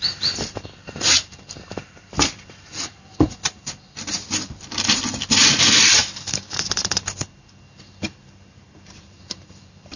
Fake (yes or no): yes